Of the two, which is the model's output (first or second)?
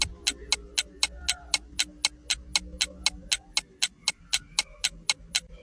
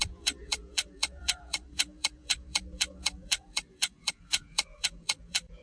second